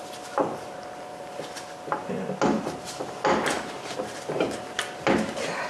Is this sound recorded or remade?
recorded